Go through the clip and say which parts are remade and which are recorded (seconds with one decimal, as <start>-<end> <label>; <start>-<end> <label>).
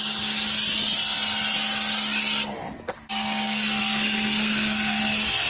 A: 0.0-3.8 recorded; 3.8-5.0 remade; 5.0-5.5 recorded